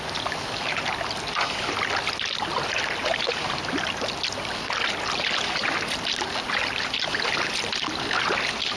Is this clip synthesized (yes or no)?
no